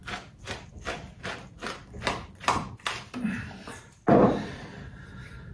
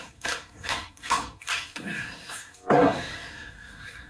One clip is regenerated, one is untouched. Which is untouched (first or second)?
first